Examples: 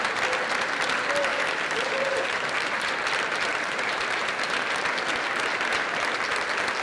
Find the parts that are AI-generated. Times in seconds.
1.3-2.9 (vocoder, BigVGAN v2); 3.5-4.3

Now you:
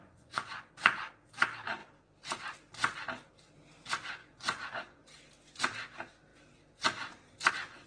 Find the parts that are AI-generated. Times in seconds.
0.0-1.1 (vocoder, Vocos); 4.2-5.2

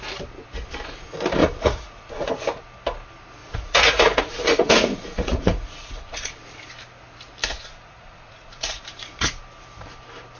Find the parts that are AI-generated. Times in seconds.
1.4-2.3 (vocoder, Vocos); 3.4-6.3; 7.5-9.4

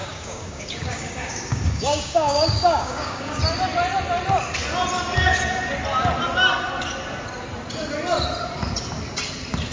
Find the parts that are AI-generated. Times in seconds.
0.0-3.4 (codec, DAC)

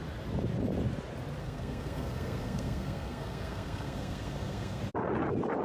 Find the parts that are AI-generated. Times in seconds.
1.4-4.8 (codec, SNAC)

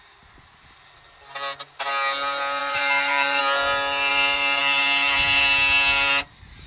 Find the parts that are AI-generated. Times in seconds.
2.6-3.4 (vocoder, Vocos); 4.1-4.6

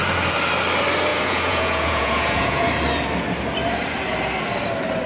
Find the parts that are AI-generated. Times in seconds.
1.1-2.7 (vocoder, Vocos)

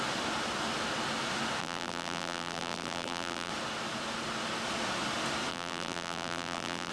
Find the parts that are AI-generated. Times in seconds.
1.6-3.5 (vocoder, BigVGAN v2); 5.5-6.9